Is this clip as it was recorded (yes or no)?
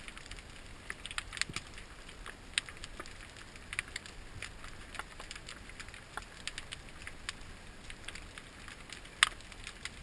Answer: yes